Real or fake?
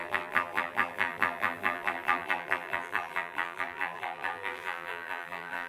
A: fake